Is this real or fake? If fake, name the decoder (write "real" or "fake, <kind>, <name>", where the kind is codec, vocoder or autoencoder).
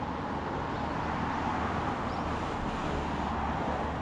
real